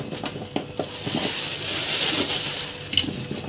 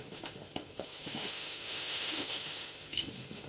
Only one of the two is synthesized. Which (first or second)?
second